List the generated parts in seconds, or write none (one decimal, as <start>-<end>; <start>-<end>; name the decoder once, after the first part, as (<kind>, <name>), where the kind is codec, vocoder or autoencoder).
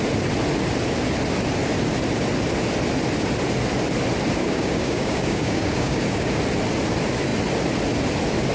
4.4-6.4 (codec, DAC)